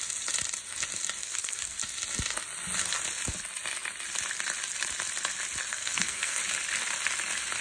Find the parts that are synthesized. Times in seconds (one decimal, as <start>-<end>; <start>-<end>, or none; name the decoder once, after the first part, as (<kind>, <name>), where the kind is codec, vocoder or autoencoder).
1.2-1.8 (codec, SNAC); 5.7-6.4